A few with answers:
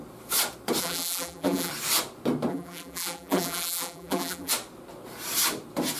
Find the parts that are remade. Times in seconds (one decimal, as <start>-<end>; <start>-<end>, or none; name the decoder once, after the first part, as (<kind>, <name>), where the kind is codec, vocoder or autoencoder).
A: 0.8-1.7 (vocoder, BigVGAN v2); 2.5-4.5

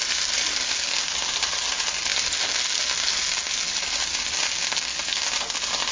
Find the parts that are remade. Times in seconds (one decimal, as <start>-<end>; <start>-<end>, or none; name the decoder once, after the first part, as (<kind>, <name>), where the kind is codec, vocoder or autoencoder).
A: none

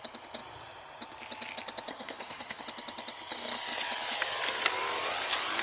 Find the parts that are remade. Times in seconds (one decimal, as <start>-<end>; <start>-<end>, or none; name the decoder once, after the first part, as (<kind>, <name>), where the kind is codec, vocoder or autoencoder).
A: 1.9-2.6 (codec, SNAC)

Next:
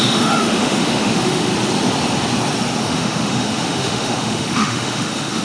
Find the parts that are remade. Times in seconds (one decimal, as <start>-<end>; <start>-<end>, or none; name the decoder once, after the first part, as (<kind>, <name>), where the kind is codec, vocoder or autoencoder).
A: 0.0-1.5 (autoencoder, DAC-VAE); 2.8-5.4

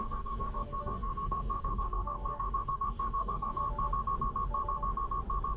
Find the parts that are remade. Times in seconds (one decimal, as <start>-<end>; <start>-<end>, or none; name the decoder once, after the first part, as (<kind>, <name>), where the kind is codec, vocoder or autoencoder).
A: 0.0-3.6 (codec, DAC)

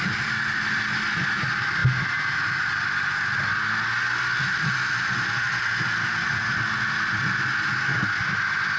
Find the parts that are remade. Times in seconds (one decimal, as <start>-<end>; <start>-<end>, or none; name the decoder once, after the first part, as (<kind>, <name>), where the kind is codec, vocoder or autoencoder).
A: none

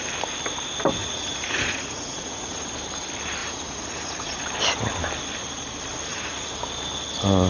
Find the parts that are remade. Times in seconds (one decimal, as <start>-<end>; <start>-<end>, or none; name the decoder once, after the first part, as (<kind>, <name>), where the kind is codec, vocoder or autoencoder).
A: 1.0-2.7 (vocoder, Vocos); 3.4-4.4; 6.1-6.6